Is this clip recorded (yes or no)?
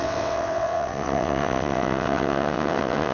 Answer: no